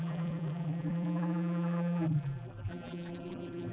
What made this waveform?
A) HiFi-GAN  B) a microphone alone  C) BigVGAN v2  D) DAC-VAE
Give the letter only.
C